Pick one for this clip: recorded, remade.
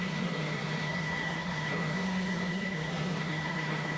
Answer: remade